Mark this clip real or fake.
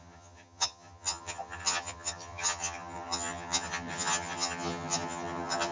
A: fake